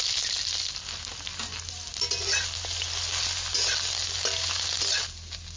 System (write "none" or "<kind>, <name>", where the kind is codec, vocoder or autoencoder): none